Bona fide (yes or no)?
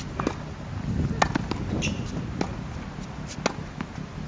yes